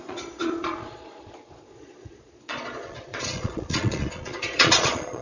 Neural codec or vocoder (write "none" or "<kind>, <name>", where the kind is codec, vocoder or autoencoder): vocoder, Vocos